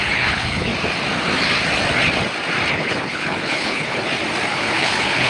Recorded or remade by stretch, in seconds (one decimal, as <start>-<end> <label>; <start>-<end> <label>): 0.0-0.7 remade; 0.7-2.7 recorded; 2.7-4.0 remade; 4.0-4.5 recorded; 4.5-5.3 remade